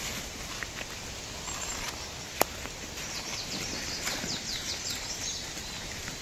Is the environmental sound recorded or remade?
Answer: recorded